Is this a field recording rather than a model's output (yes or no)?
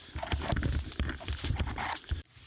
no